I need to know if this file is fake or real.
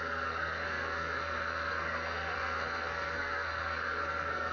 fake